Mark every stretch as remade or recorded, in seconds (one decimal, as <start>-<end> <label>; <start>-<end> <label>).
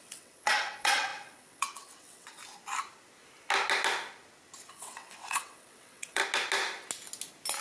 0.0-2.4 remade; 2.4-4.7 recorded; 4.7-6.2 remade; 6.2-7.6 recorded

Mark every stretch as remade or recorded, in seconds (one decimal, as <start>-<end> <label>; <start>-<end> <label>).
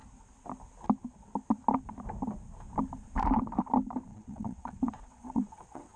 0.0-4.1 recorded; 4.1-6.0 remade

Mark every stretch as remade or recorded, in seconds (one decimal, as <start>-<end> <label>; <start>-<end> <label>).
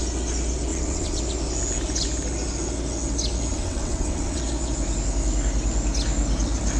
0.0-0.7 recorded; 0.7-1.2 remade; 1.2-3.5 recorded; 3.5-4.4 remade; 4.4-6.8 recorded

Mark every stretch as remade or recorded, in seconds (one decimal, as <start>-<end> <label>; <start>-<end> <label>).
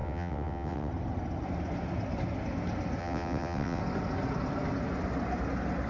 0.0-0.9 remade; 0.9-3.0 recorded; 3.0-3.8 remade; 3.8-5.9 recorded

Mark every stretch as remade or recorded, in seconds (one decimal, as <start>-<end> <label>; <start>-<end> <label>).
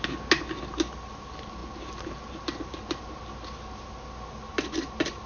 0.0-5.3 recorded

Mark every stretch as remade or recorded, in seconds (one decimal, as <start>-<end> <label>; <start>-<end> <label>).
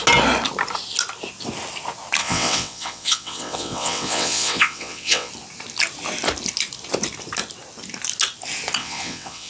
0.0-2.2 recorded; 2.2-5.3 remade; 5.3-8.8 recorded; 8.8-9.5 remade